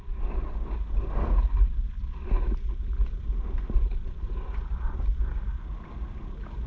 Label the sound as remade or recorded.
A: recorded